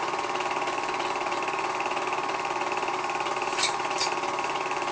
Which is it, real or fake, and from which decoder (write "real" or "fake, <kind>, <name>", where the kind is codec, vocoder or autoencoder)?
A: fake, vocoder, BigVGAN v2